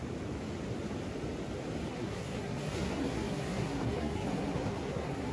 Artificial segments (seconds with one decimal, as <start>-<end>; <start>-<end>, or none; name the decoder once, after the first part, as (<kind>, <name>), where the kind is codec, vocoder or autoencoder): 1.9-5.3 (codec, SNAC)